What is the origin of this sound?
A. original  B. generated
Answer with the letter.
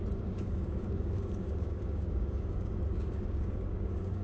B